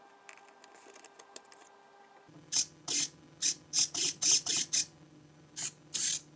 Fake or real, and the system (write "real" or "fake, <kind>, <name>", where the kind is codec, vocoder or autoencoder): real